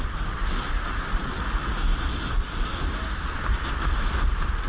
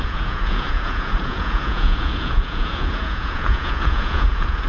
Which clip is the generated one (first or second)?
second